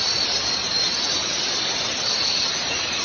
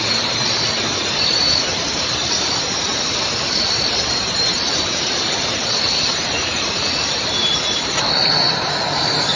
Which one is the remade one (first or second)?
second